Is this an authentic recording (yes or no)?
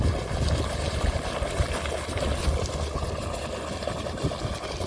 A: yes